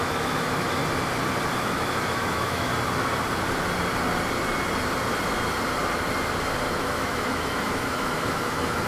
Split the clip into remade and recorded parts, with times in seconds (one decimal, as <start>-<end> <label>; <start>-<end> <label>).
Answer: 0.0-0.8 remade; 0.8-1.5 recorded; 1.5-2.7 remade; 2.7-6.7 recorded; 6.7-8.9 remade